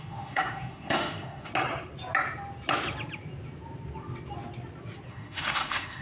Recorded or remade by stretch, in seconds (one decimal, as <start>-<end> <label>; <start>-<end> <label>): 0.0-1.5 remade; 1.5-5.1 recorded; 5.1-6.0 remade